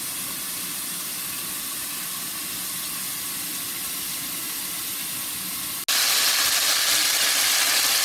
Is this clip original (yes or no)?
yes